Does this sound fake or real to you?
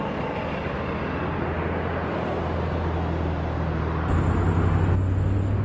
real